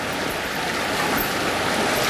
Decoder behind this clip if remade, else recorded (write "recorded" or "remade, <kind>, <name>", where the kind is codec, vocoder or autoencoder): recorded